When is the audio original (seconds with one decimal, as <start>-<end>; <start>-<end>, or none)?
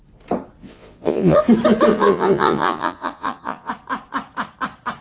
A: 0.0-0.6; 1.4-1.9; 3.7-5.0